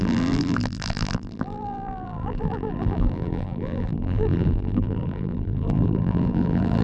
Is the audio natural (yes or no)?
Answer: no